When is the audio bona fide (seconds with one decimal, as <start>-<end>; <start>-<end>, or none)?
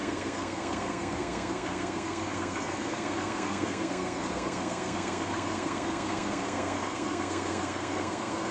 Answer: none